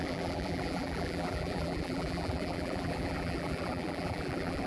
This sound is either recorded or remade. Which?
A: remade